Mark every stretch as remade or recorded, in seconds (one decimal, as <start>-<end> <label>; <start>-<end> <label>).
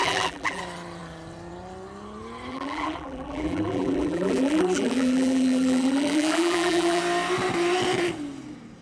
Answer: 0.0-0.6 remade; 0.6-2.5 recorded; 2.5-7.0 remade; 7.0-8.8 recorded